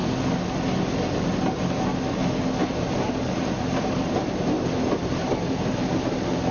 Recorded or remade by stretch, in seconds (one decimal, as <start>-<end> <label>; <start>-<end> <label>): 0.0-2.6 recorded; 2.6-5.7 remade; 5.7-6.5 recorded